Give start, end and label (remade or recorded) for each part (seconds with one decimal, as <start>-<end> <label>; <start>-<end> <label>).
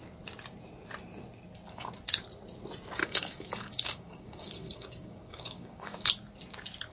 0.0-3.0 recorded; 3.0-6.1 remade; 6.1-6.9 recorded